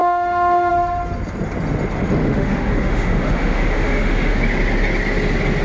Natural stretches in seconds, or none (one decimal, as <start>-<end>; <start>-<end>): 0.7-2.2; 4.4-5.6